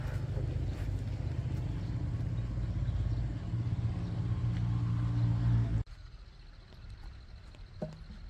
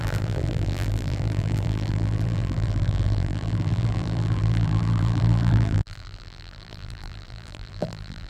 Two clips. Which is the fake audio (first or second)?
second